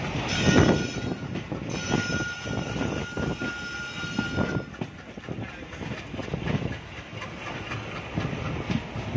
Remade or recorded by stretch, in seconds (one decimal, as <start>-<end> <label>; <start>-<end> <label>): 0.0-9.2 recorded